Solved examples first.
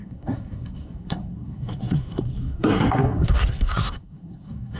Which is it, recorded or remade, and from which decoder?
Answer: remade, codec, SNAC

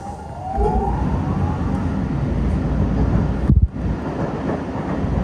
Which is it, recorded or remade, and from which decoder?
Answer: recorded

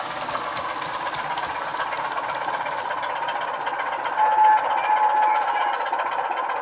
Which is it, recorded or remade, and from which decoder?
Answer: recorded